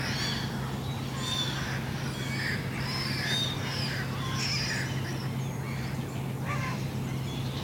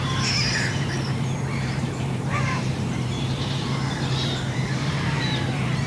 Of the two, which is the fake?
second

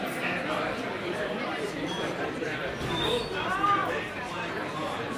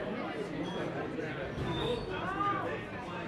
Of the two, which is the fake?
first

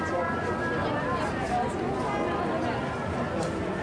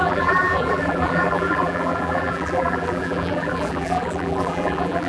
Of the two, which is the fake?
second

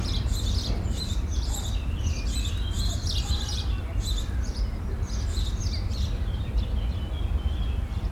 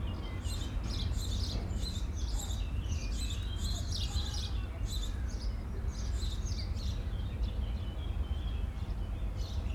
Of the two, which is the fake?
first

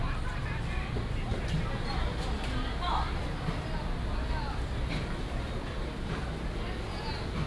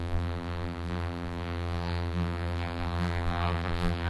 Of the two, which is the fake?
second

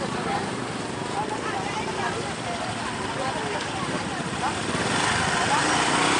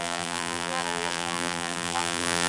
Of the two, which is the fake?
second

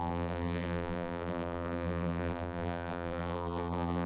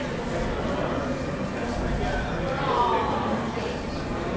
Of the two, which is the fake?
first